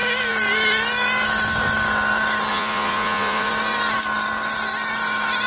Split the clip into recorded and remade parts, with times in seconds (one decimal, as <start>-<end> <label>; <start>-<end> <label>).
0.0-2.5 recorded; 2.5-3.5 remade; 3.5-5.5 recorded

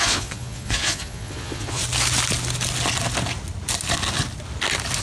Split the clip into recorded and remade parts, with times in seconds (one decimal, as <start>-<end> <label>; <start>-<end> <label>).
0.0-1.8 remade; 1.8-5.0 recorded

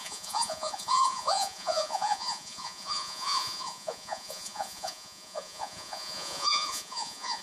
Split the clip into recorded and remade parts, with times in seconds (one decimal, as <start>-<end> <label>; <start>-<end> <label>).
0.0-7.4 remade

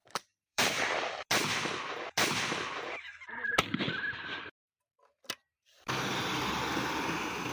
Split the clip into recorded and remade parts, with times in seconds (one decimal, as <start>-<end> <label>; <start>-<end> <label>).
0.0-1.1 remade; 1.1-7.5 recorded

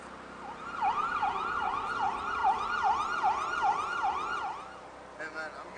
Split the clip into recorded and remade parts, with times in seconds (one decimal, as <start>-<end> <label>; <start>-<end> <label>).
0.0-5.8 recorded

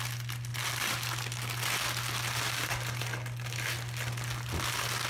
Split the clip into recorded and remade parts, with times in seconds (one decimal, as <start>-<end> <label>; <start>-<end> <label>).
0.0-5.1 recorded

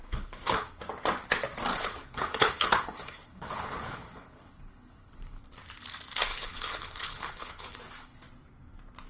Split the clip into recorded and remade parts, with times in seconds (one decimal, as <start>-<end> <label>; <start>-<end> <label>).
0.0-0.8 remade; 0.8-1.7 recorded; 1.7-5.4 remade; 5.4-6.3 recorded; 6.3-8.3 remade; 8.3-9.1 recorded

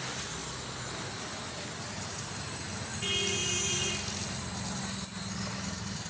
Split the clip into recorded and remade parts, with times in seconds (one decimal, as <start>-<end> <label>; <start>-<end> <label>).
0.0-6.1 recorded